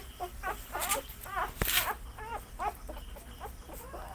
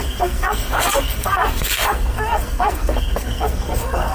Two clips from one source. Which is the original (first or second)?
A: first